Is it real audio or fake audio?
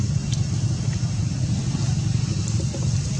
real